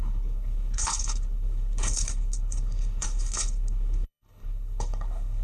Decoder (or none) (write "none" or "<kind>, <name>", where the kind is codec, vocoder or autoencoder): codec, HILCodec